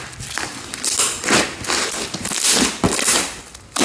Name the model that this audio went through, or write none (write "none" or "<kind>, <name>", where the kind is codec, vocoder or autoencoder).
none